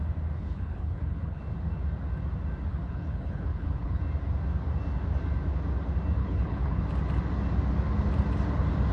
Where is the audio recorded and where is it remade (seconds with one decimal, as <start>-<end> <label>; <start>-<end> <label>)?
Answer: 0.0-0.4 recorded; 0.4-1.4 remade; 1.4-2.7 recorded; 2.7-4.0 remade; 4.0-6.2 recorded; 6.2-6.8 remade; 6.8-8.9 recorded